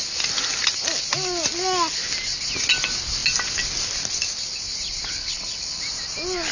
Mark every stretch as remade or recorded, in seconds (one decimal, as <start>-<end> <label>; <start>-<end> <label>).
0.0-5.2 recorded; 5.2-5.8 remade; 5.8-6.5 recorded